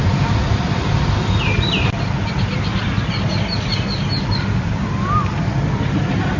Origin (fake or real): real